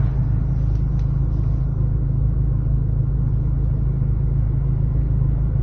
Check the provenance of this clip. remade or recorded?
recorded